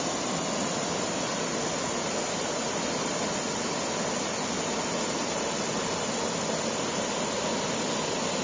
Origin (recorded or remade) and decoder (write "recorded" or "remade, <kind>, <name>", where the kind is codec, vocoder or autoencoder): recorded